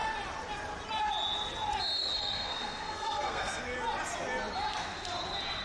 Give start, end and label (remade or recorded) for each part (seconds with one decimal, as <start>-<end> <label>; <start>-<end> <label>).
0.0-2.0 recorded; 2.0-3.6 remade; 3.6-5.6 recorded